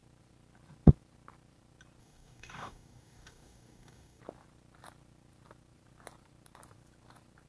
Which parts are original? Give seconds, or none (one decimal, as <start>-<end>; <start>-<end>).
0.0-2.0; 4.2-7.5